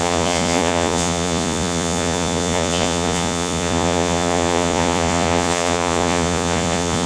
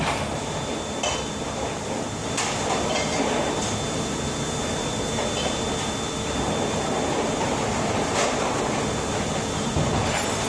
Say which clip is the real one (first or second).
second